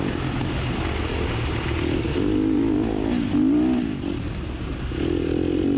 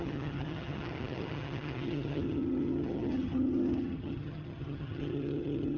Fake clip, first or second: second